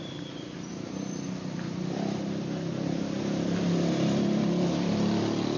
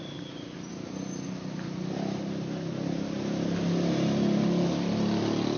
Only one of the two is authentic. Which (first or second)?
second